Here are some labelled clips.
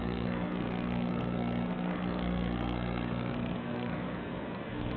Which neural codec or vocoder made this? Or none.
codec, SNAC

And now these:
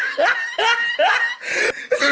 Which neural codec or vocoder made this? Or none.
none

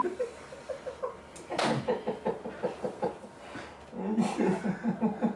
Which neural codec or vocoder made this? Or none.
none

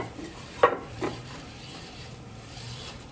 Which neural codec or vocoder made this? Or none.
vocoder, BigVGAN v2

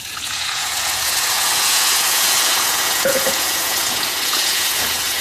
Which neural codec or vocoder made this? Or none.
vocoder, Vocos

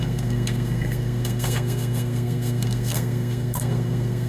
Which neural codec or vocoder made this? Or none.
codec, SNAC